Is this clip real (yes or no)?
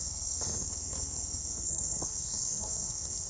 no